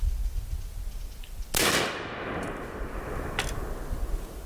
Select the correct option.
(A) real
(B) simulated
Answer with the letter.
A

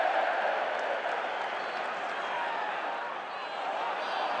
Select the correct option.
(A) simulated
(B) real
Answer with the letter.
B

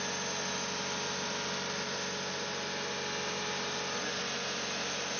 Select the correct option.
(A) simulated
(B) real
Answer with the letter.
B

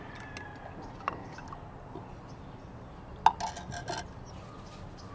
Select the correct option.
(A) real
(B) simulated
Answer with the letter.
A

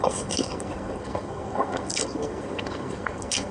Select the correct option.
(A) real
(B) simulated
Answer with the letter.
B